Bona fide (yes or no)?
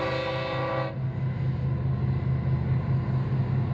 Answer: yes